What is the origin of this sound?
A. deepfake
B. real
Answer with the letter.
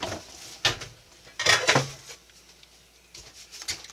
B